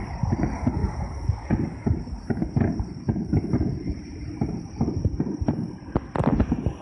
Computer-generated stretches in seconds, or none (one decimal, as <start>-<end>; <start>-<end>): none